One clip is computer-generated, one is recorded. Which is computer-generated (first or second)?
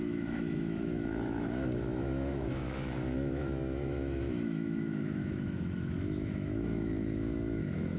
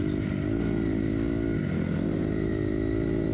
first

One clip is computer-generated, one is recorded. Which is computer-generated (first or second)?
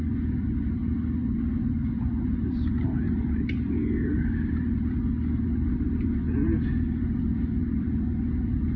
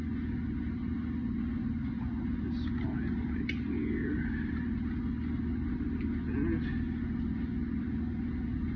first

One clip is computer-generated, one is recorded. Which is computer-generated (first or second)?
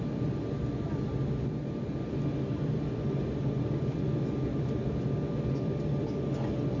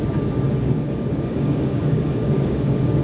second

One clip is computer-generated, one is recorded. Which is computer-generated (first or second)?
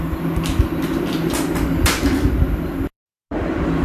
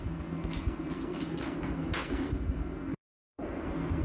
second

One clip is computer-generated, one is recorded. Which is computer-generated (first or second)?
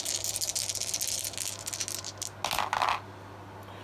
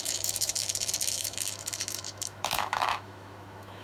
second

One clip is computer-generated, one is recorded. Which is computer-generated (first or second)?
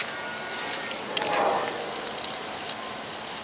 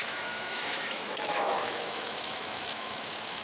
second